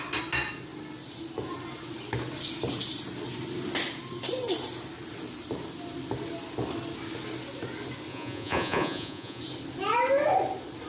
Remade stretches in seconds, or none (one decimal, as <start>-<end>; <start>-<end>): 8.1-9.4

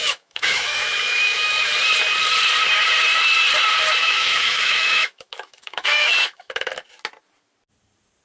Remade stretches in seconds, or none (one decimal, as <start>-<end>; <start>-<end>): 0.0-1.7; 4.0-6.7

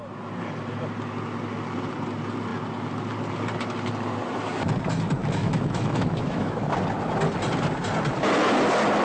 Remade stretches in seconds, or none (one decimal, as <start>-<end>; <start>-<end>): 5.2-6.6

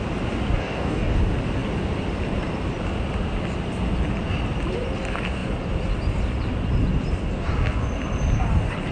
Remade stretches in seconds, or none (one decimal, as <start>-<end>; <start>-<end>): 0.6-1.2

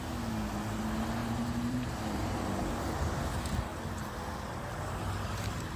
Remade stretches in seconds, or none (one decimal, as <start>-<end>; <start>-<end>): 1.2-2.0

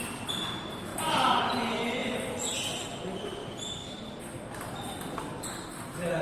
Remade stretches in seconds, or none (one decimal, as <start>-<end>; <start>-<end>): 0.9-1.4; 2.0-2.6; 3.4-4.2

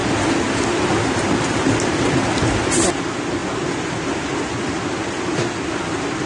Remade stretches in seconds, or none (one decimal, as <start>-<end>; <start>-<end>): none